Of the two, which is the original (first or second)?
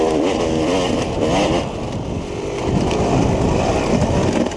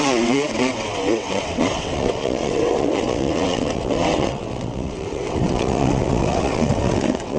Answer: first